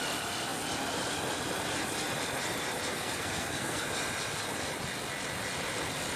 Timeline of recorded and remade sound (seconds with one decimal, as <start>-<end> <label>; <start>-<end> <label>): 0.0-2.9 recorded; 2.9-3.9 remade; 3.9-6.2 recorded